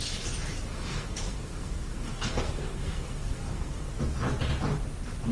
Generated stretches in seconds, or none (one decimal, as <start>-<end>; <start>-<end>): 0.7-3.9